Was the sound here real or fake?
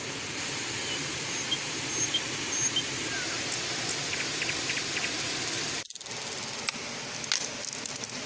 real